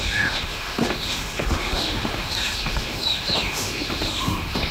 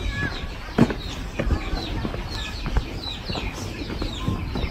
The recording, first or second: second